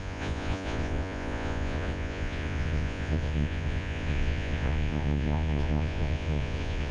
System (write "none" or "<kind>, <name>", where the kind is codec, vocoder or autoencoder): vocoder, Vocos